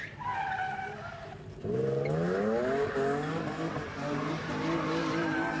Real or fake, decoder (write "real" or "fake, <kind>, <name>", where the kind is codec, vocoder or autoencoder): real